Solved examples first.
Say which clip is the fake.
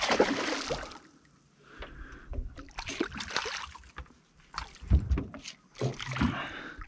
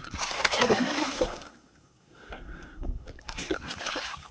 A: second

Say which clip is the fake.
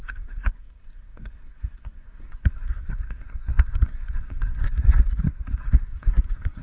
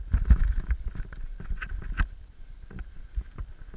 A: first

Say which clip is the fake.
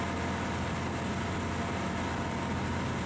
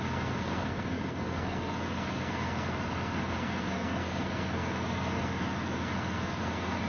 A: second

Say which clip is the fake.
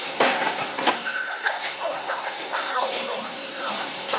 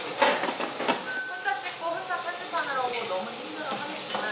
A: first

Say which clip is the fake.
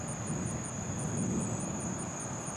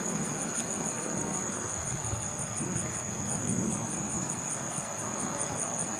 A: second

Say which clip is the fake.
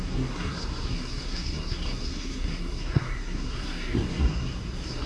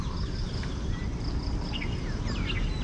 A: first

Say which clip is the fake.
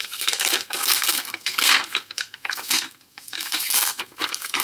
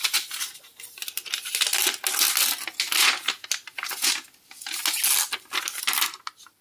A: first